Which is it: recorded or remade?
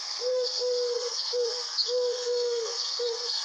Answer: remade